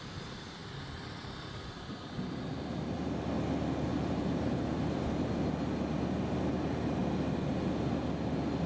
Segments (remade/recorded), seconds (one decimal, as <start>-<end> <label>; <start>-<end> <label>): 0.0-3.9 recorded; 3.9-5.0 remade; 5.0-8.7 recorded